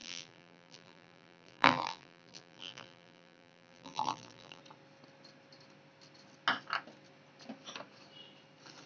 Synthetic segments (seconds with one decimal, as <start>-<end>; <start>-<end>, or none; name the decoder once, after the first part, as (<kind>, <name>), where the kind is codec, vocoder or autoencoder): 0.0-4.6 (vocoder, BigVGAN v2)